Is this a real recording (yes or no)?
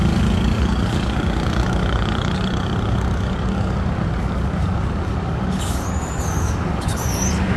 no